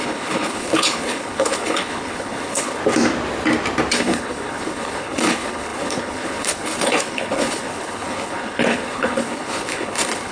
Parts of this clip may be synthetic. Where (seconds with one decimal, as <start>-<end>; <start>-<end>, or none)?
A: 0.0-2.8; 3.9-10.3

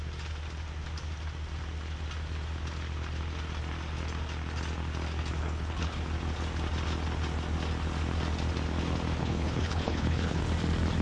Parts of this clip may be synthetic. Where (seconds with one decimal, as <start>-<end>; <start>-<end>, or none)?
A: 5.4-6.0; 9.2-10.4

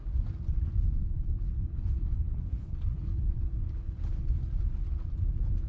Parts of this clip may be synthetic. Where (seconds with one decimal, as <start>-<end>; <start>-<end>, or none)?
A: 1.0-4.4

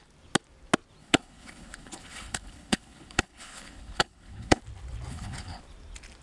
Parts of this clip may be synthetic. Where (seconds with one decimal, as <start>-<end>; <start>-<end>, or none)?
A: 1.0-4.6; 5.1-5.6

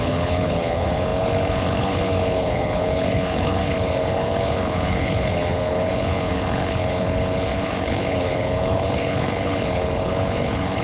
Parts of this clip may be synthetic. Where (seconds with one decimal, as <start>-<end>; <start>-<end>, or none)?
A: 0.0-10.8

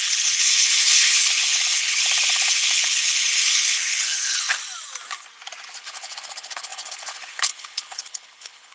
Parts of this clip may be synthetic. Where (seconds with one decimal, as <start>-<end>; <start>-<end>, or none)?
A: 0.0-4.6; 5.8-8.7